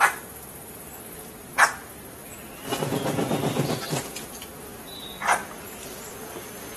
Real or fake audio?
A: real